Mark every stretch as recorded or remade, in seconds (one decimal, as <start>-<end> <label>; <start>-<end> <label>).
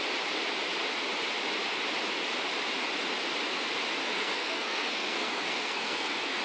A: 0.0-4.0 recorded; 4.0-6.4 remade